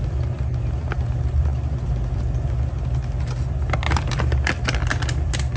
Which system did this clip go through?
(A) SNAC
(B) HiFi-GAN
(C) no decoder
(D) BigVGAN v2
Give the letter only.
C